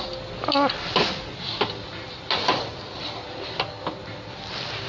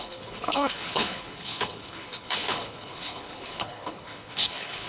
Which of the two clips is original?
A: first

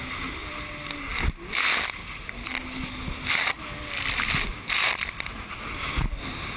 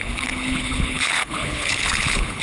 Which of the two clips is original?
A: first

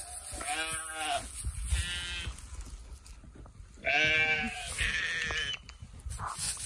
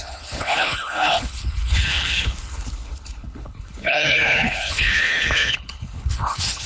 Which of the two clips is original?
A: first